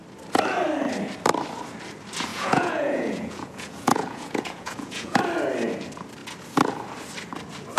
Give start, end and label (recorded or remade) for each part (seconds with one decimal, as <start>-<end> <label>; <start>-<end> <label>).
0.0-2.3 recorded; 2.3-5.2 remade; 5.2-7.8 recorded